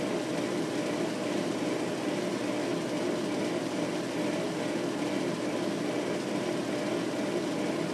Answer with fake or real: real